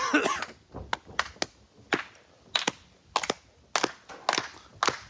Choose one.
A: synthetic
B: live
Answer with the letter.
B